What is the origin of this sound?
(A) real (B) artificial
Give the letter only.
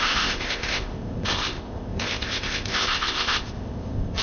B